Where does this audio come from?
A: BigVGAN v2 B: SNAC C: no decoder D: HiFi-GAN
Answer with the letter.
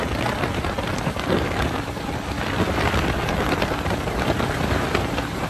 A